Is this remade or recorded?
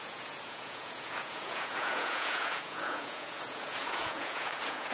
remade